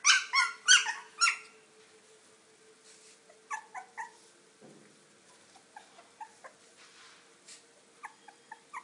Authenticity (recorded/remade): recorded